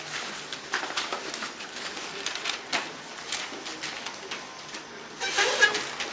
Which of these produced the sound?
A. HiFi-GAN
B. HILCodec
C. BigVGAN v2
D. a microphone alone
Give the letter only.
D